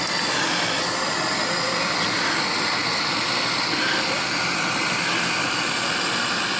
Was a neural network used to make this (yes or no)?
no